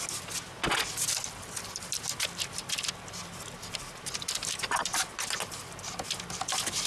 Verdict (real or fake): real